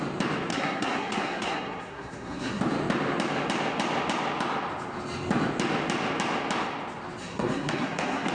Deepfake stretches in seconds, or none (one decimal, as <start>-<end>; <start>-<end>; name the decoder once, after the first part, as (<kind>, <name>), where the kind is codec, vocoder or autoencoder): 0.5-2.6 (codec, SNAC); 7.2-8.3